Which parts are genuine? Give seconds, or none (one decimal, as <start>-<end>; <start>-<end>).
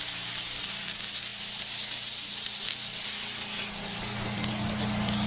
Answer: 0.0-5.3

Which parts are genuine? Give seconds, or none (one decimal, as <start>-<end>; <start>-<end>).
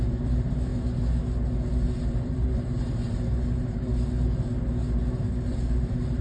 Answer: 0.7-2.1; 3.9-5.0